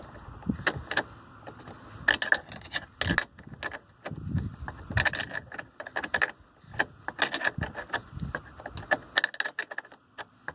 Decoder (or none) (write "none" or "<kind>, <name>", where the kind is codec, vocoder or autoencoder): none